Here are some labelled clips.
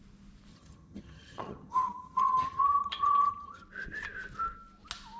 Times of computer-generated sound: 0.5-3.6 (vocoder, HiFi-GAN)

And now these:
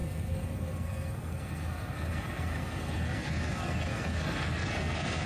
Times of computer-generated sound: 0.0-5.3 (codec, SNAC)

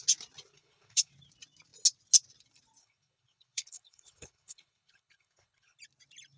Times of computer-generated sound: 0.5-1.1 (codec, HILCodec); 2.8-5.8

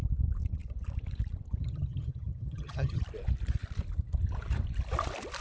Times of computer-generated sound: 1.6-3.0 (vocoder, HiFi-GAN)

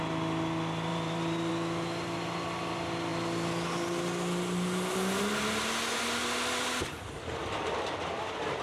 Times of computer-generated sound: 0.9-1.5 (vocoder, BigVGAN v2)

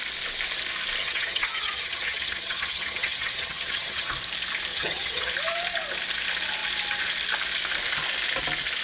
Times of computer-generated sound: 1.0-4.1 (vocoder, HiFi-GAN); 4.7-5.3

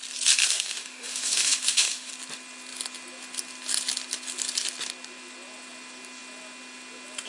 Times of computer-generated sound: 0.4-2.1 (autoencoder, DAC-VAE)